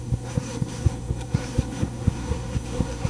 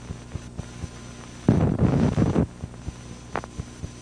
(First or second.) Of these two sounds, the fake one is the first